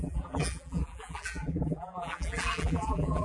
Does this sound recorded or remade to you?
remade